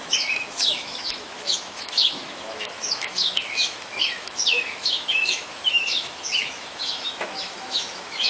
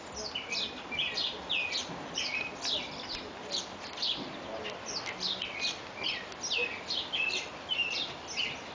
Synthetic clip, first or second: first